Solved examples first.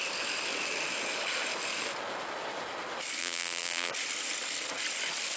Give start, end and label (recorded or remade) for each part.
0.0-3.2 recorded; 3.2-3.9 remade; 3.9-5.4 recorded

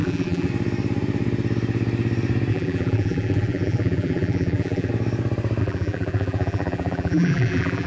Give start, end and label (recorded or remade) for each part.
0.0-0.5 remade; 0.5-2.5 recorded; 2.5-4.9 remade; 4.9-5.6 recorded; 5.6-7.9 remade

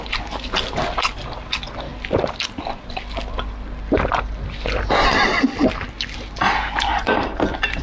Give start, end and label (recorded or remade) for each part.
0.0-6.9 recorded; 6.9-7.8 remade